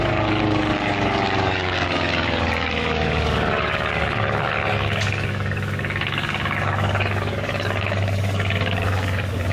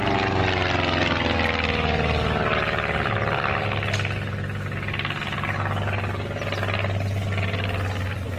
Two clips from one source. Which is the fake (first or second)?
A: first